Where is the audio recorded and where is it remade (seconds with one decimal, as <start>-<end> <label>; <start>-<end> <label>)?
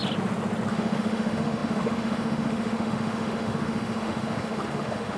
0.0-0.7 recorded; 0.7-5.2 remade